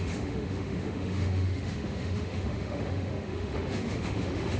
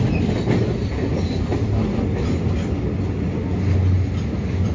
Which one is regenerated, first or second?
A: first